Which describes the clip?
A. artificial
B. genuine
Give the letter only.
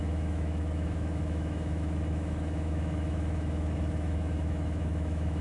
A